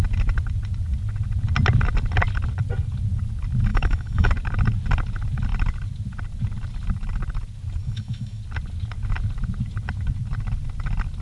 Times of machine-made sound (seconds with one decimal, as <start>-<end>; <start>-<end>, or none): 3.7-4.3; 7.8-8.4